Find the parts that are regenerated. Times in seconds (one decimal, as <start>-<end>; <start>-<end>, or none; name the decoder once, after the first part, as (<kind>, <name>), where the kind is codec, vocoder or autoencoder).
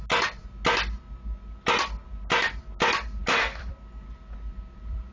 3.2-5.1 (vocoder, BigVGAN v2)